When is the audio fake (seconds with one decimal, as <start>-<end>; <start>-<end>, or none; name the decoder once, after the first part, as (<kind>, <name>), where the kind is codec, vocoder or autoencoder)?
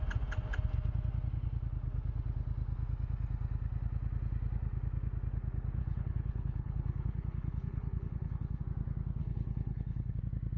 5.8-8.6 (codec, HILCodec); 9.2-10.2